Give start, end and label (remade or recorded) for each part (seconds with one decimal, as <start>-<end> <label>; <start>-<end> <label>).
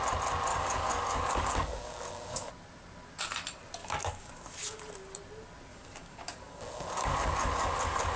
0.0-0.5 recorded; 0.5-2.5 remade; 2.5-3.8 recorded; 3.8-4.8 remade; 4.8-5.7 recorded; 5.7-8.2 remade